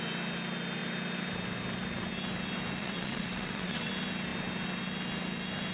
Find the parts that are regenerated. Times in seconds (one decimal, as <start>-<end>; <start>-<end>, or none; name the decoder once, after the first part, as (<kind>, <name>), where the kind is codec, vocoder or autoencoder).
2.8-3.9 (vocoder, WaveNeXt)